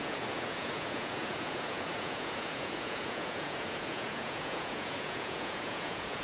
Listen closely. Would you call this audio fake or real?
fake